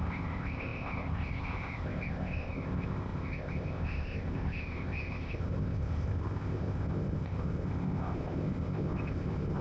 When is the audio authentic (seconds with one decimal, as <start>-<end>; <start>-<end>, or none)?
none